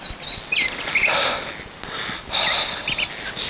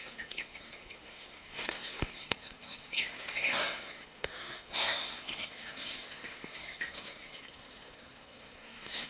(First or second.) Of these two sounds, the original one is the first